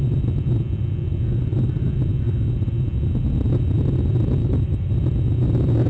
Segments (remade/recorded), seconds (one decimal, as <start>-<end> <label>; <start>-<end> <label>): 0.0-4.4 recorded; 4.4-4.9 remade; 4.9-5.9 recorded